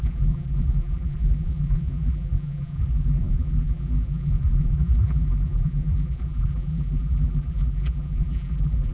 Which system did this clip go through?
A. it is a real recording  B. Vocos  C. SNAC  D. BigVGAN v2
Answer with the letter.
D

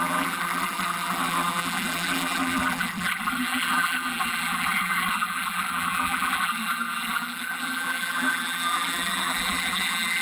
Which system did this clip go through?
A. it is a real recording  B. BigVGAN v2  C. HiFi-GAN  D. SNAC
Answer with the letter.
B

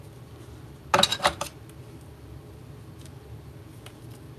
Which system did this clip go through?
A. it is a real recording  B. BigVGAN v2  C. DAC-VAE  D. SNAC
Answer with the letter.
A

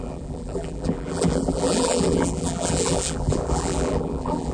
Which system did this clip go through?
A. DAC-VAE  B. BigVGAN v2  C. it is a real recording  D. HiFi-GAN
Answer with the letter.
B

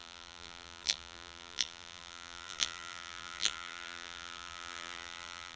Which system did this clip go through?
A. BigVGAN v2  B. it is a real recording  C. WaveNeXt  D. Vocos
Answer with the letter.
A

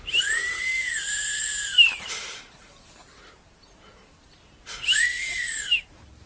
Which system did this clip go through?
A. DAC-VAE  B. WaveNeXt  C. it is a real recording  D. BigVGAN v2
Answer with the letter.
D